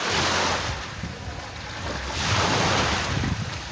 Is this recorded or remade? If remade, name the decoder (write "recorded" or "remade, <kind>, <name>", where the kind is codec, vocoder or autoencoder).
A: recorded